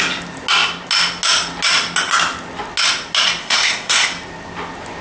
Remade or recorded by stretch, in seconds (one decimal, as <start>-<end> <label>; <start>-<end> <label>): 0.0-3.4 recorded; 3.4-4.1 remade; 4.1-5.0 recorded